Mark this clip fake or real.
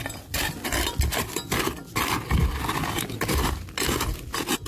real